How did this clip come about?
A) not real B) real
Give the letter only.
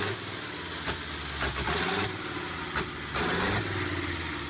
B